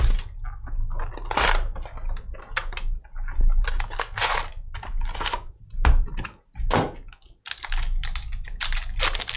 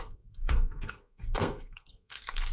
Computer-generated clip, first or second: second